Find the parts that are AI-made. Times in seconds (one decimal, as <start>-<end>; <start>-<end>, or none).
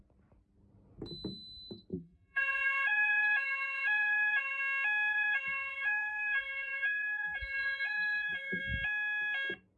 1.9-4.6; 5.1-8.6